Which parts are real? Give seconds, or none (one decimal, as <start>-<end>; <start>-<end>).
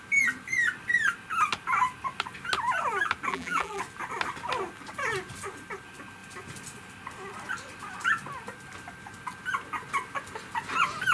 0.0-3.3; 3.8-11.1